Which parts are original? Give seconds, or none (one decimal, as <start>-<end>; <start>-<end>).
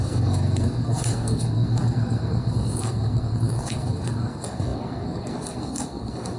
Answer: none